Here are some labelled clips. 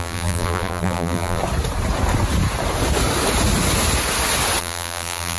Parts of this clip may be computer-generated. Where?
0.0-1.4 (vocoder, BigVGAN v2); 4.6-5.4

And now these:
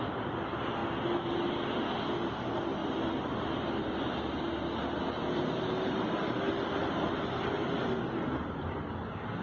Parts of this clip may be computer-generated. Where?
none

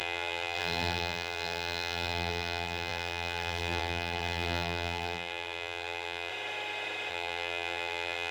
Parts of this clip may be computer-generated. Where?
0.0-6.3 (vocoder, BigVGAN v2); 7.1-8.3

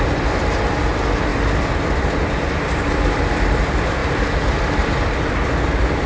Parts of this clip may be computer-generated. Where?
0.0-6.1 (vocoder, BigVGAN v2)

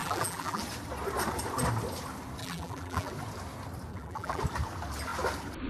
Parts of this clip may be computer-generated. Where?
0.0-0.6 (vocoder, BigVGAN v2); 2.4-3.1; 3.9-4.4